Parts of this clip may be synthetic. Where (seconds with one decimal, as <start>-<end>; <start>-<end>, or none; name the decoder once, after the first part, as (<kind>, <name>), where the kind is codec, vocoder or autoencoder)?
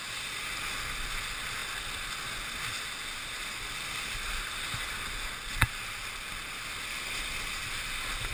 none